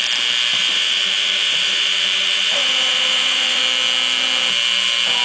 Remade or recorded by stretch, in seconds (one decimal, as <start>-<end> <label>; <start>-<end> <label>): 0.0-0.5 recorded; 0.5-3.6 remade; 3.6-5.2 recorded